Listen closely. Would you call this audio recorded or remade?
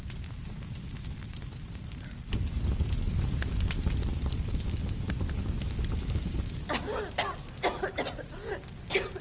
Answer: recorded